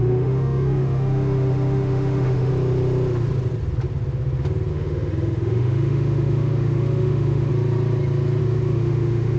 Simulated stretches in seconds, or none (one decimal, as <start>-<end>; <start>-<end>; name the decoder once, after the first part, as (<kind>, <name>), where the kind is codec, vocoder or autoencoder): 0.0-2.5 (autoencoder, DAC-VAE); 4.7-7.5; 8.4-9.4